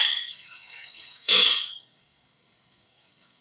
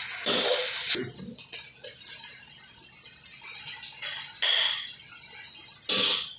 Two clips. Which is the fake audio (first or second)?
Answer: first